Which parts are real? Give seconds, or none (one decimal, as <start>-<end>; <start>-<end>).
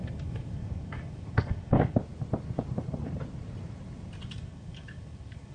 2.0-4.3